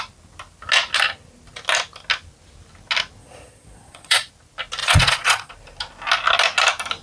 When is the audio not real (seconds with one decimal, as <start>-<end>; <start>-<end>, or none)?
3.2-4.3; 4.8-5.5